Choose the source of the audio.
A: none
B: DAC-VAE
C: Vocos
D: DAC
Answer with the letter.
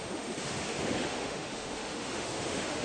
B